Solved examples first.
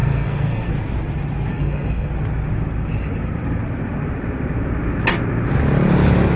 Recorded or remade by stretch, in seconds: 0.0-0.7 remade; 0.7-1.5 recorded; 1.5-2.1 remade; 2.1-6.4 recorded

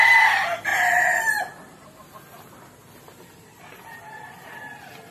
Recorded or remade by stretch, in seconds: 0.0-0.7 recorded; 0.7-2.6 remade; 2.6-5.1 recorded

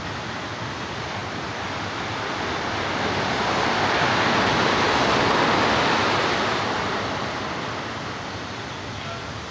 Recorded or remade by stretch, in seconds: 0.0-9.5 recorded

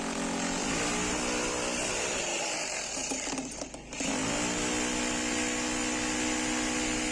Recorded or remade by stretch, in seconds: 0.0-7.1 recorded